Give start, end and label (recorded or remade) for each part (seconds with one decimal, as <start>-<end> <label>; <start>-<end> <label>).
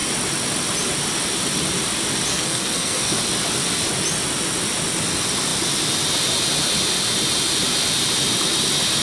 0.0-2.3 recorded; 2.3-3.2 remade; 3.2-9.0 recorded